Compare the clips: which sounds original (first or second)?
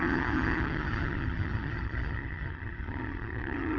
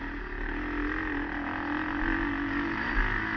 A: second